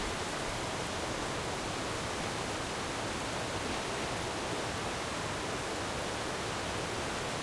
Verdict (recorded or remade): recorded